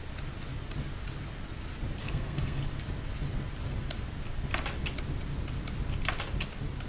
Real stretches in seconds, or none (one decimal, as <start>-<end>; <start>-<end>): 0.0-2.0; 2.6-6.9